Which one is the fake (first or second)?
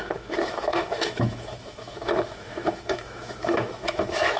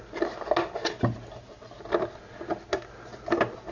first